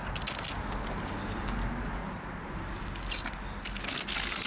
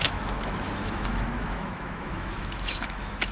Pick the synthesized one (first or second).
second